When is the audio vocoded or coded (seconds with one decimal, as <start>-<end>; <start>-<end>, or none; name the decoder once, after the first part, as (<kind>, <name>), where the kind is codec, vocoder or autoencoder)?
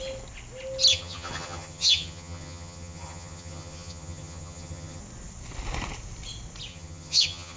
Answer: 0.9-5.0 (vocoder, HiFi-GAN); 6.7-7.6